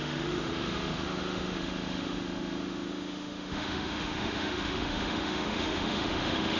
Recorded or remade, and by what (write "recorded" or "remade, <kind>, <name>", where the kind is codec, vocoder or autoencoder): remade, autoencoder, DAC-VAE